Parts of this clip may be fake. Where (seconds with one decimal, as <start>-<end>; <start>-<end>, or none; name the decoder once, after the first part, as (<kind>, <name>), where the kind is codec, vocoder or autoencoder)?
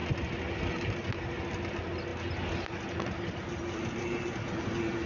none